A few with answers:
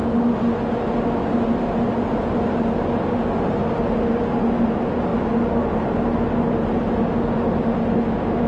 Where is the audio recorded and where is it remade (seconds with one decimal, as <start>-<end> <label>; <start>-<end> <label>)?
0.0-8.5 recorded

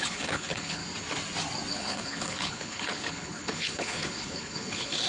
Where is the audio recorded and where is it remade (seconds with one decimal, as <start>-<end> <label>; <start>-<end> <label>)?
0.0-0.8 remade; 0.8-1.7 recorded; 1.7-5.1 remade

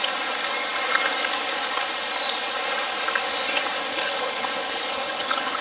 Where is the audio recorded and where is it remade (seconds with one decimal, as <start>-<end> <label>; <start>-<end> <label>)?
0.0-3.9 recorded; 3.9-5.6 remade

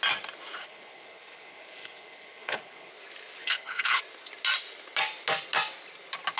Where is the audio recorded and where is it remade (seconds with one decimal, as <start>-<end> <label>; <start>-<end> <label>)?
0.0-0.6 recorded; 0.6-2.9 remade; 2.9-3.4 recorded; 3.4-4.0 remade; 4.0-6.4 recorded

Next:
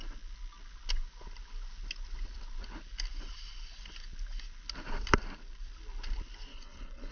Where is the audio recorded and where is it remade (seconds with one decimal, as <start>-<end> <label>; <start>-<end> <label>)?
0.0-6.5 recorded; 6.5-7.1 remade